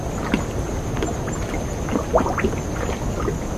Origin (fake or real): real